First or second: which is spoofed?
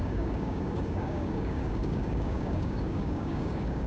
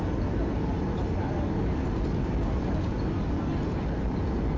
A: first